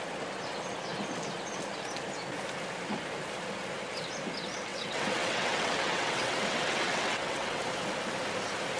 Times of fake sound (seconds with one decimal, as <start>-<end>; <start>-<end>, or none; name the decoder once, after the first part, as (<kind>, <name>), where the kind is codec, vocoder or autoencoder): 4.7-7.6 (vocoder, WaveNeXt)